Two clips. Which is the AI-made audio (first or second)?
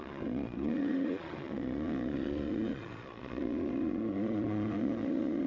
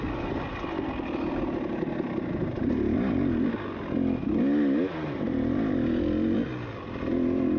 first